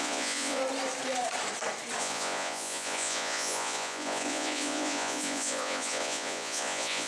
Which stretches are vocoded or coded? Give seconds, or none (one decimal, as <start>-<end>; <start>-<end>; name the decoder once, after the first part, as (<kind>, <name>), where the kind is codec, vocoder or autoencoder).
0.0-0.6 (vocoder, Vocos); 2.0-7.1